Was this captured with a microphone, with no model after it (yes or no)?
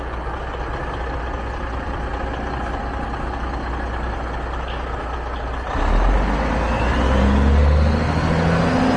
yes